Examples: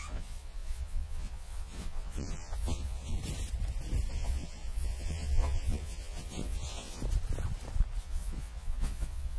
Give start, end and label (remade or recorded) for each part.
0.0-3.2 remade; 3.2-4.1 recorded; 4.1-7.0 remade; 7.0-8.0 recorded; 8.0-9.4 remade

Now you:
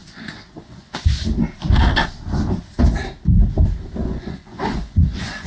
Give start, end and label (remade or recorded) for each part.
0.0-1.1 remade; 1.1-4.0 recorded; 4.0-5.5 remade

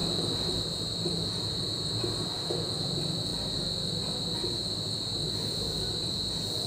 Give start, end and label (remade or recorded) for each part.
0.0-1.1 remade; 1.1-6.7 recorded

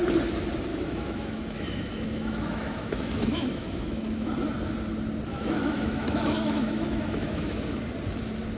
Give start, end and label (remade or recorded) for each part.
0.0-0.7 recorded; 0.7-4.3 remade; 4.3-5.3 recorded; 5.3-7.8 remade; 7.8-8.6 recorded

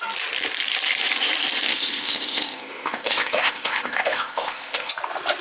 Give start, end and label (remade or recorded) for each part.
0.0-1.7 recorded; 1.7-4.9 remade; 4.9-5.4 recorded

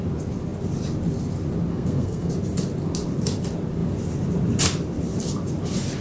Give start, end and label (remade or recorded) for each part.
0.0-1.7 recorded; 1.7-2.3 remade; 2.3-6.0 recorded

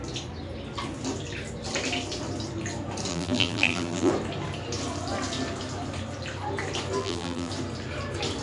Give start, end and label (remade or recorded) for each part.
0.0-3.1 recorded; 3.1-4.1 remade; 4.1-7.0 recorded; 7.0-7.5 remade; 7.5-8.4 recorded